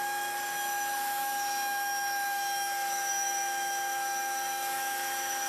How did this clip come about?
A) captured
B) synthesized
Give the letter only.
B